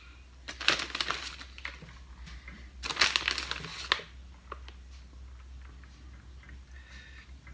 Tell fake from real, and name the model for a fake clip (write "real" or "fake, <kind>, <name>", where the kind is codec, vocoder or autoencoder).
real